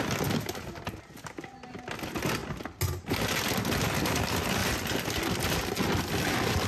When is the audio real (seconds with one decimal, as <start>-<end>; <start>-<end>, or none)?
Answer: 0.0-6.7